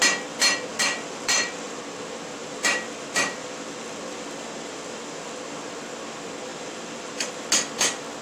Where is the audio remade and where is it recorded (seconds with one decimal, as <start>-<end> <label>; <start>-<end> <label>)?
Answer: 0.0-0.7 recorded; 0.7-1.8 remade; 1.8-2.4 recorded; 2.4-5.8 remade; 5.8-6.5 recorded; 6.5-7.4 remade; 7.4-8.2 recorded